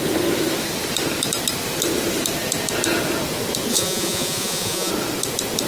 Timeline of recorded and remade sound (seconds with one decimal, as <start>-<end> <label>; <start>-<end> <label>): 0.0-3.7 recorded; 3.7-4.9 remade; 4.9-5.7 recorded

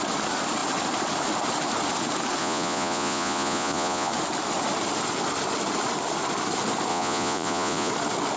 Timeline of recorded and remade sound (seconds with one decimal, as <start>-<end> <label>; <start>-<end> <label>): 0.0-2.4 recorded; 2.4-4.1 remade; 4.1-6.9 recorded; 6.9-7.9 remade; 7.9-8.4 recorded

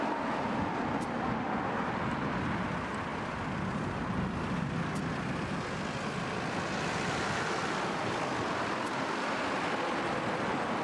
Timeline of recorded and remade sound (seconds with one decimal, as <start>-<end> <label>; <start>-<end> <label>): 0.0-10.8 recorded

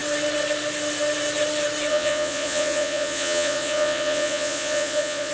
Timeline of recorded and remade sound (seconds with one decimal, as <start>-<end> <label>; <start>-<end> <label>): 0.0-1.9 recorded; 1.9-5.3 remade

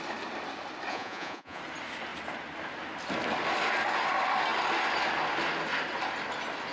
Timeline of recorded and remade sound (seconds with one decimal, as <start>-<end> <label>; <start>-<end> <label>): 0.0-0.9 recorded; 0.9-1.6 remade; 1.6-6.7 recorded

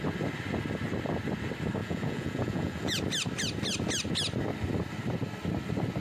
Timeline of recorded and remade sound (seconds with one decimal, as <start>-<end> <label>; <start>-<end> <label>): 0.0-1.8 recorded; 1.8-3.0 remade; 3.0-6.0 recorded

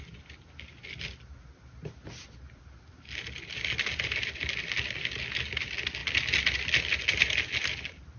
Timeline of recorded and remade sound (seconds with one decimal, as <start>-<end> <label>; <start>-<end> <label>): 0.0-8.2 recorded

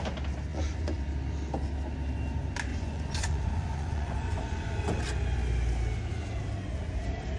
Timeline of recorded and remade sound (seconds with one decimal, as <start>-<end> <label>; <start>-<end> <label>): 0.0-0.5 recorded; 0.5-1.0 remade; 1.0-2.7 recorded; 2.7-5.0 remade; 5.0-7.4 recorded